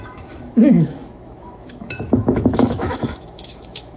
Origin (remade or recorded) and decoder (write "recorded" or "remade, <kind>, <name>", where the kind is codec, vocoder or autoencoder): remade, autoencoder, DAC-VAE